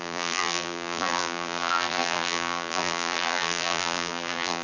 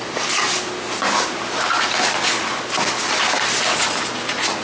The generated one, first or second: first